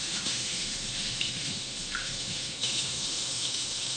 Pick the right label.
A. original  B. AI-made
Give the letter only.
B